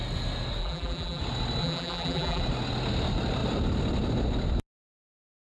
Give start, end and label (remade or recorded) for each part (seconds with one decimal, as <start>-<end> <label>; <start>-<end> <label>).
0.0-0.6 recorded; 0.6-1.2 remade; 1.2-1.6 recorded; 1.6-2.4 remade; 2.4-5.4 recorded